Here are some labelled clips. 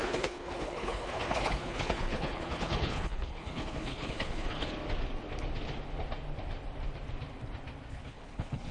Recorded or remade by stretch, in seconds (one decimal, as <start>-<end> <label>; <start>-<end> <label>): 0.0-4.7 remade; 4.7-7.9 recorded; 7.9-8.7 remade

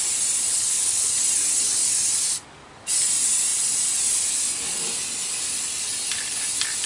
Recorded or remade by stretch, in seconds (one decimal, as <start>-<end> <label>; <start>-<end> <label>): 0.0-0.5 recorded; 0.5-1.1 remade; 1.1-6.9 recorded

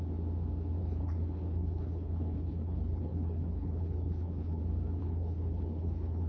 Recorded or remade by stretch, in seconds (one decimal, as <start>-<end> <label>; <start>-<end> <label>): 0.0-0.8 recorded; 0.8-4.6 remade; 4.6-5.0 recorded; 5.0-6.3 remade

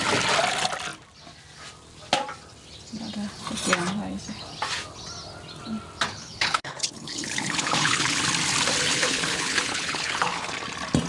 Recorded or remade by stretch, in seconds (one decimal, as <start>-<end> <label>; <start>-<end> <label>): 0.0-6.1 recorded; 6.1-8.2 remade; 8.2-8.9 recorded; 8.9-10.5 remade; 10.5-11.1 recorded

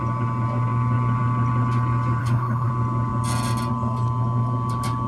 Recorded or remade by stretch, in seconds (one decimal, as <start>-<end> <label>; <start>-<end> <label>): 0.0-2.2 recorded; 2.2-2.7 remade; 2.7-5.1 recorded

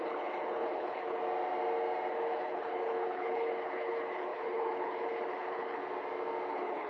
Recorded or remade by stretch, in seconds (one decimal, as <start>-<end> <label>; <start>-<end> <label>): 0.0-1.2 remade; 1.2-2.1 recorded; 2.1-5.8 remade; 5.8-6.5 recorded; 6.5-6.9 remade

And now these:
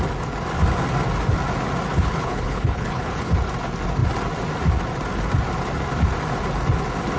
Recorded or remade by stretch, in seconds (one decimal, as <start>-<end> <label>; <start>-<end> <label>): 0.0-1.9 recorded; 1.9-3.3 remade; 3.3-7.2 recorded